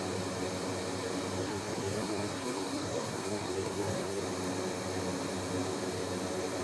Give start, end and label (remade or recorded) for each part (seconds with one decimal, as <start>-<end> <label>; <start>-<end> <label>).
0.0-1.4 recorded; 1.4-4.2 remade; 4.2-6.6 recorded